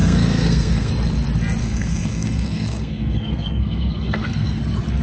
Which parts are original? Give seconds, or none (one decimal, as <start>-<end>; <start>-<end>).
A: 0.9-1.6; 4.6-5.0